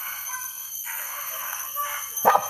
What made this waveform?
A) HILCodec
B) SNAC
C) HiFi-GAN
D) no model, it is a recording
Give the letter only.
B